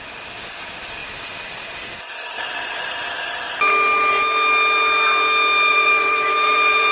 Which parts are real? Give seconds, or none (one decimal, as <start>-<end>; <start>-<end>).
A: 0.0-5.7